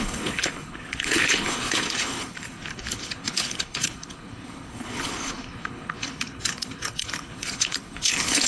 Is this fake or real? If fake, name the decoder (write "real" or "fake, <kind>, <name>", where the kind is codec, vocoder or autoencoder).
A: fake, codec, HILCodec